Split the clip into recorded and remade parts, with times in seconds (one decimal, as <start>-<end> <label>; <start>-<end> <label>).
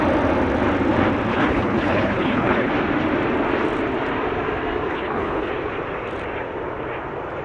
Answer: 0.0-1.3 recorded; 1.3-2.7 remade; 2.7-4.9 recorded; 4.9-5.5 remade; 5.5-7.4 recorded